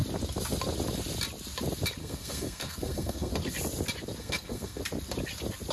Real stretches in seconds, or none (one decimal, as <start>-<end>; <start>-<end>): 0.0-2.0; 3.3-4.2; 4.8-5.7